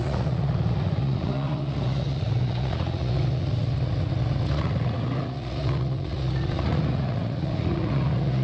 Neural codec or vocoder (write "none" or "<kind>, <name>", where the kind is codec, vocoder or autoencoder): vocoder, Vocos